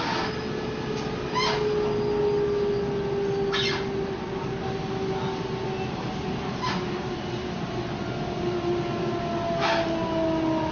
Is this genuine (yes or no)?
yes